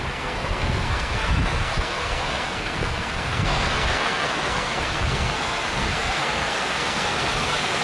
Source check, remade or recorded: remade